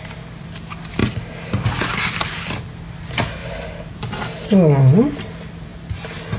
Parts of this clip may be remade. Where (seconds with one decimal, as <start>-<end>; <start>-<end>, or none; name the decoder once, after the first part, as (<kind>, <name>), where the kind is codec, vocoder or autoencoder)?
1.0-2.5 (vocoder, BigVGAN v2)